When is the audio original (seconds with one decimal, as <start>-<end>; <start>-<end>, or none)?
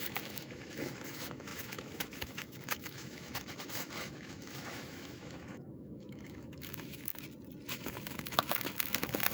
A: 7.1-7.7